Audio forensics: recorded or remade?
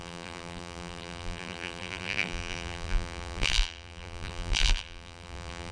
remade